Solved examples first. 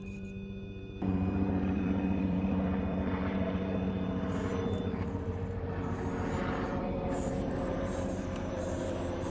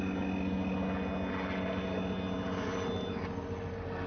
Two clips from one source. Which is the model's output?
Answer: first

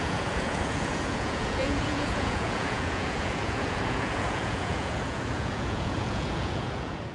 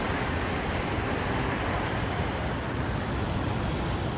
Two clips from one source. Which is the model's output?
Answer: first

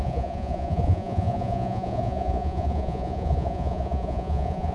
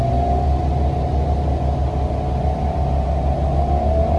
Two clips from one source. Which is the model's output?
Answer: first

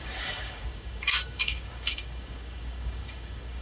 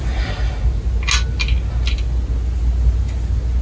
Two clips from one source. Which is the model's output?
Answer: first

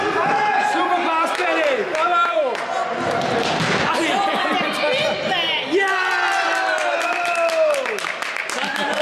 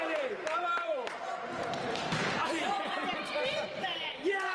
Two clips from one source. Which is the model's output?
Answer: second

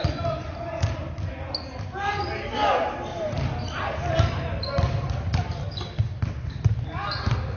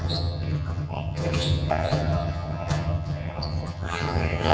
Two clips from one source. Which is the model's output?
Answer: second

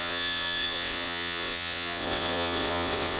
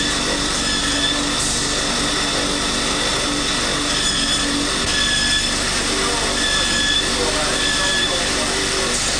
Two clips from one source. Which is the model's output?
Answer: first